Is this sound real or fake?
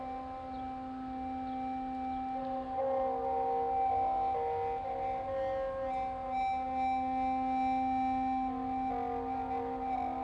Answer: real